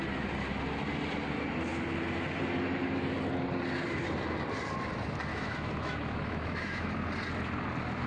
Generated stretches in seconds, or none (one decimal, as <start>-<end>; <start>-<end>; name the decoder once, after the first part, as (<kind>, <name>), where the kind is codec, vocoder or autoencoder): 5.3-6.9 (autoencoder, DAC-VAE)